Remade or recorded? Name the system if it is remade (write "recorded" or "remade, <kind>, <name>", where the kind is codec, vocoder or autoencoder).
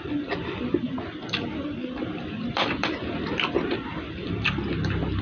remade, vocoder, BigVGAN v2